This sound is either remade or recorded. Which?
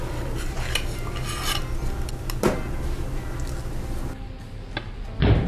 recorded